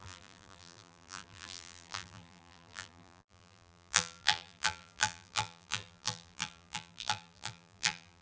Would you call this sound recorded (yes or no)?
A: no